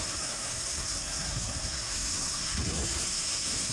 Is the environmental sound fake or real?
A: fake